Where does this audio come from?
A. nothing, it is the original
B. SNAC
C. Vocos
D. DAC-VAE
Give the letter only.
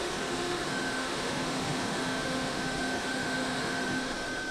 D